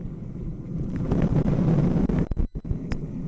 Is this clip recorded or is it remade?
recorded